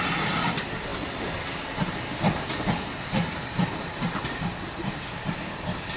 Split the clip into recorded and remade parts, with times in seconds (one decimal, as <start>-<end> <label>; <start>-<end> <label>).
0.0-6.0 recorded